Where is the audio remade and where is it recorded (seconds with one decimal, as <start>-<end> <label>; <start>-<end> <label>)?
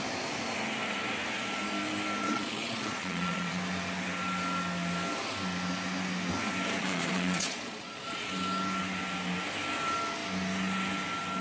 0.0-2.2 recorded; 2.2-3.6 remade; 3.6-6.8 recorded; 6.8-8.3 remade; 8.3-11.4 recorded